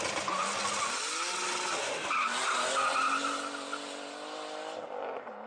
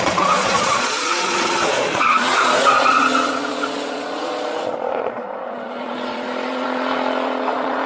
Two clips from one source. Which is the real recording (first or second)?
first